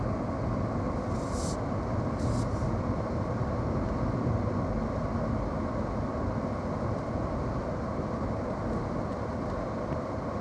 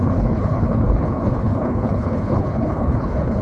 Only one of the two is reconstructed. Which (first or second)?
second